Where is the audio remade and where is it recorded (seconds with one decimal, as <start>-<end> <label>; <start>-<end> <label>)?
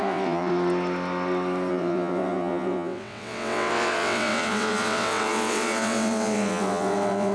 0.0-0.5 remade; 0.5-1.7 recorded; 1.7-7.3 remade